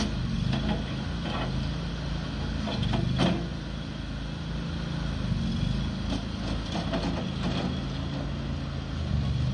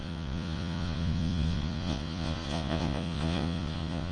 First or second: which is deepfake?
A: second